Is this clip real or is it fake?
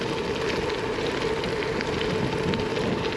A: real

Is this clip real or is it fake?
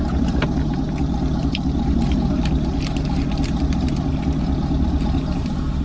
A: fake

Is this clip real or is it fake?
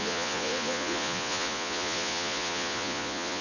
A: fake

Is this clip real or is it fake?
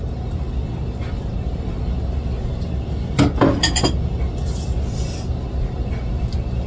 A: real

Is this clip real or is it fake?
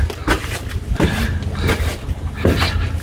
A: real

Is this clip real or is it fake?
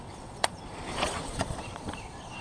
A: fake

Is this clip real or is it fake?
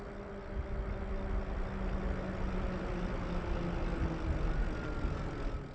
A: real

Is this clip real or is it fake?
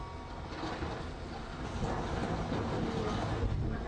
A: real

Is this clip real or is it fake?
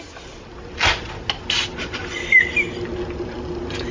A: real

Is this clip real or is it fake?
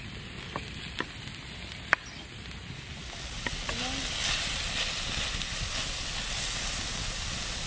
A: real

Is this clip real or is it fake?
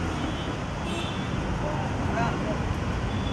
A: real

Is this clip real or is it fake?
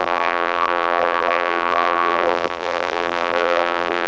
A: fake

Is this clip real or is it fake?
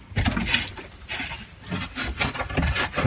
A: real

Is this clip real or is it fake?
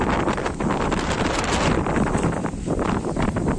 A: real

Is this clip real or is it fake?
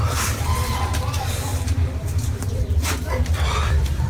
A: fake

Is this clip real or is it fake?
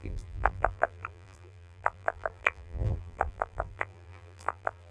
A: fake